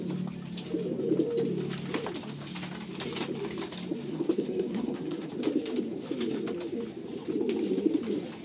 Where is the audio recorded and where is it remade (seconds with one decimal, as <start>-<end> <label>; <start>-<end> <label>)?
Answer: 0.0-4.1 recorded; 4.1-5.3 remade; 5.3-8.4 recorded